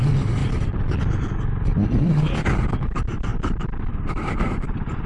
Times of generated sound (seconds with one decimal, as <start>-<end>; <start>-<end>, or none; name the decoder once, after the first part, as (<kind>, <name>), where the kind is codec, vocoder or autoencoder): 0.4-1.0 (vocoder, BigVGAN v2); 1.7-2.6; 3.3-5.1